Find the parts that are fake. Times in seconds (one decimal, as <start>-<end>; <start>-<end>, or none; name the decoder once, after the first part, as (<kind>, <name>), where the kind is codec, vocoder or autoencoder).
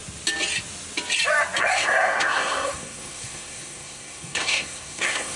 1.6-5.4 (codec, SNAC)